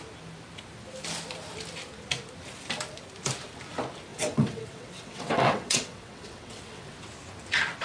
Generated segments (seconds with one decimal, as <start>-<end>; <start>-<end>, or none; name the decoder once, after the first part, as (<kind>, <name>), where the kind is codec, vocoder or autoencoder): 4.1-6.9 (vocoder, WaveNeXt)